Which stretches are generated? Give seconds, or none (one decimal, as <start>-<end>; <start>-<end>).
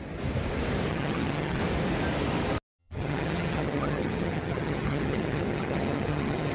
0.9-1.6; 2.8-6.5